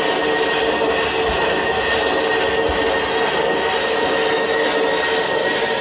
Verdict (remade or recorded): recorded